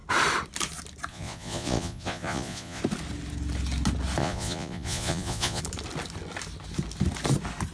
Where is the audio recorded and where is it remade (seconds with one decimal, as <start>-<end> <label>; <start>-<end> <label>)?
0.0-1.1 recorded; 1.1-2.8 remade; 2.8-4.2 recorded; 4.2-5.6 remade; 5.6-7.7 recorded